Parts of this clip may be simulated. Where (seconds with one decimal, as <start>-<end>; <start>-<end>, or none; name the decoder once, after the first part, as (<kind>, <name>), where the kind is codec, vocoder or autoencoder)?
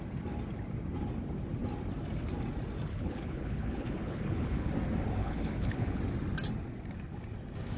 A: 2.9-4.7 (codec, HILCodec); 5.2-6.0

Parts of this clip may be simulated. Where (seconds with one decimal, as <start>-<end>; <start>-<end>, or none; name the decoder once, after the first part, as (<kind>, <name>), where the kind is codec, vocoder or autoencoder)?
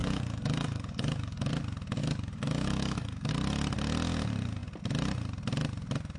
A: 0.0-1.5 (codec, DAC); 2.0-3.3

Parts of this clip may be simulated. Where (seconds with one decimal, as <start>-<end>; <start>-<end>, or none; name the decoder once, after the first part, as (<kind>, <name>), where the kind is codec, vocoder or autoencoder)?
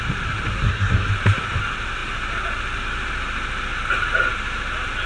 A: 0.5-1.1 (codec, SNAC)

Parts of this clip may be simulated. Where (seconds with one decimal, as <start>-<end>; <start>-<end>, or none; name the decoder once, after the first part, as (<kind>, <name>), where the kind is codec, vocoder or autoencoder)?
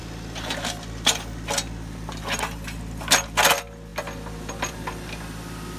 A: none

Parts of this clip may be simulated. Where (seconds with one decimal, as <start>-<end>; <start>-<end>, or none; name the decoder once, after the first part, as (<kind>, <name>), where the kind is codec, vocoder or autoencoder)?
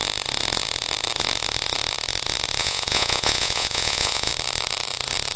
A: 2.6-4.3 (vocoder, Vocos)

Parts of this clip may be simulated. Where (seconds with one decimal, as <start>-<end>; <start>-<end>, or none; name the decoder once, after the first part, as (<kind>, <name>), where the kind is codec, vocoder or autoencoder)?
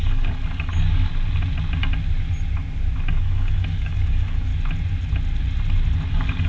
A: 0.0-1.1 (codec, DAC); 3.1-4.5; 6.1-6.5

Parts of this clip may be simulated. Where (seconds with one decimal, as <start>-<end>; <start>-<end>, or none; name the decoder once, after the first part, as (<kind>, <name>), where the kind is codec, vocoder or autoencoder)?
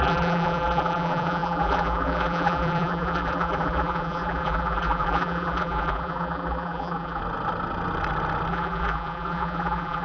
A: 0.0-7.2 (vocoder, BigVGAN v2); 8.5-10.0